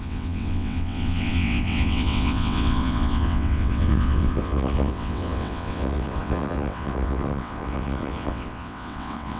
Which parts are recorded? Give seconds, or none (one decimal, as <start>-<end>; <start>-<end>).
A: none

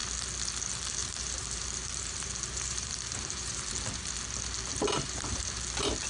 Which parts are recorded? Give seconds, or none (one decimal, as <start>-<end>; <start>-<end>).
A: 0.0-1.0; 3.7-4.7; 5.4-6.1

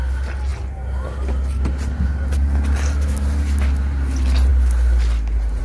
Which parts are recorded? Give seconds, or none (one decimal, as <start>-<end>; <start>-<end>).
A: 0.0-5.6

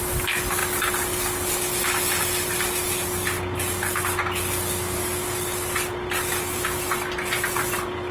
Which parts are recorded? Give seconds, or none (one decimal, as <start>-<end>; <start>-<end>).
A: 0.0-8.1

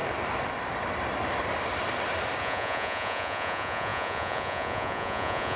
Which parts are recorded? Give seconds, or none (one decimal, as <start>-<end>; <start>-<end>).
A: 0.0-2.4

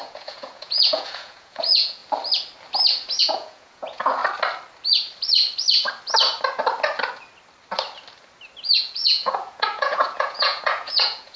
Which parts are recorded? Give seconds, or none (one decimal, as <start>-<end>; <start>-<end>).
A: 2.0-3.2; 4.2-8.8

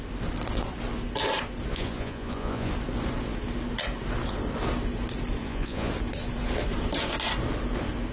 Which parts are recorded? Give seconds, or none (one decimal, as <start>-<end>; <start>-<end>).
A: 0.0-1.7; 2.7-5.4; 5.9-8.1